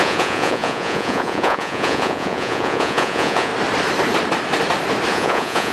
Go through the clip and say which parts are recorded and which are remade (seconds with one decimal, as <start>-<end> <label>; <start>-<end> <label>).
0.0-3.5 remade; 3.5-5.1 recorded; 5.1-5.7 remade